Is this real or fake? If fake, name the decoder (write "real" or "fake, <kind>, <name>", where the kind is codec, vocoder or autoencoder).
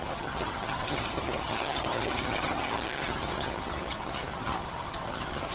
fake, vocoder, HiFi-GAN